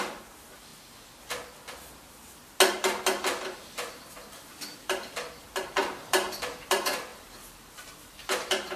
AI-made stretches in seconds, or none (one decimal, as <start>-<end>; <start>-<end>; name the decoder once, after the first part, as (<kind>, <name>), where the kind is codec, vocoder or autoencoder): 0.0-0.7 (vocoder, BigVGAN v2); 3.4-8.8